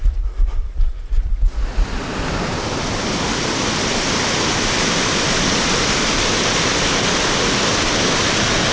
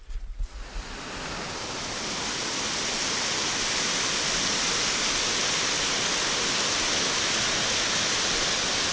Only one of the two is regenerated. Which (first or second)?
first